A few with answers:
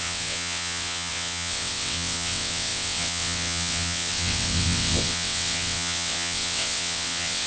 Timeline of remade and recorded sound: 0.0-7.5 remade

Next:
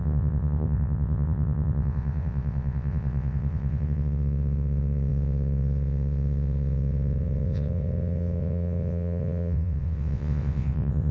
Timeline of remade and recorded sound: 0.0-11.1 remade

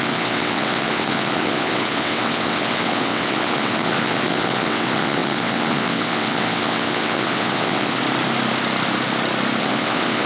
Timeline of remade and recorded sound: 0.0-8.0 remade; 8.0-9.6 recorded; 9.6-10.3 remade

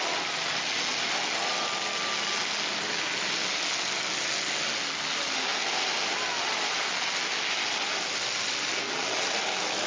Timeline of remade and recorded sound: 0.0-9.9 recorded